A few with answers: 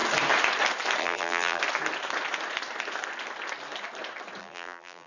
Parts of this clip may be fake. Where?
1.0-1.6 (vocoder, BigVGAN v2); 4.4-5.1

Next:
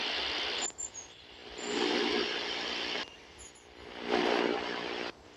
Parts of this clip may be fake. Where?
none

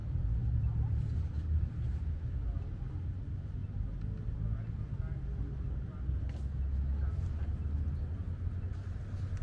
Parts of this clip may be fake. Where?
0.0-1.7 (vocoder, BigVGAN v2)

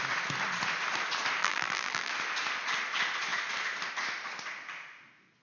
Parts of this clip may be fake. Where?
1.4-2.1 (vocoder, BigVGAN v2)

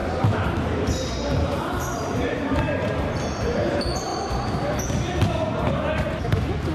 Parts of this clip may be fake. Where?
0.0-4.1 (vocoder, BigVGAN v2); 5.7-6.7

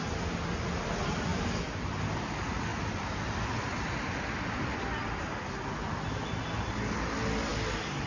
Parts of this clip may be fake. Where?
1.3-2.2 (vocoder, BigVGAN v2)

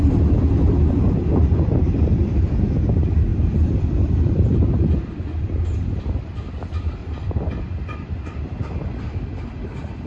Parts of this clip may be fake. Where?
0.0-7.0 (vocoder, BigVGAN v2)